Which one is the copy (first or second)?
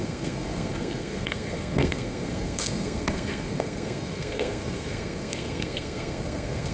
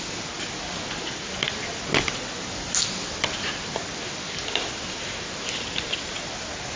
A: first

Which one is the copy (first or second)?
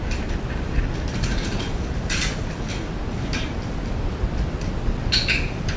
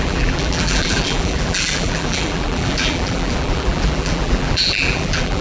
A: second